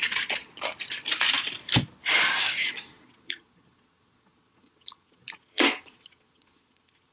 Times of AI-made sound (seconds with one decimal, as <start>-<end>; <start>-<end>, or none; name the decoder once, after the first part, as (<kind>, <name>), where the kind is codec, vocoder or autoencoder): 0.0-0.5 (vocoder, Vocos); 2.6-7.1